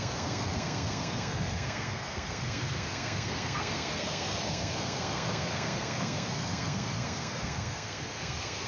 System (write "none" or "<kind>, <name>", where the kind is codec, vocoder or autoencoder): codec, SNAC